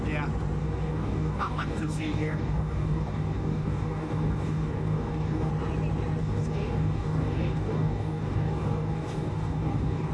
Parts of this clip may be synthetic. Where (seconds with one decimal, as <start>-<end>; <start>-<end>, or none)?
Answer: 0.6-5.5; 6.2-10.1